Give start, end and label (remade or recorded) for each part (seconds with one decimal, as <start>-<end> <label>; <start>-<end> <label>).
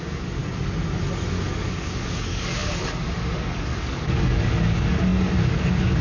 0.0-0.4 remade; 0.4-1.3 recorded; 1.3-6.0 remade